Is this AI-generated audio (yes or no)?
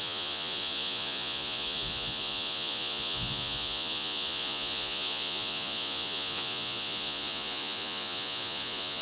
yes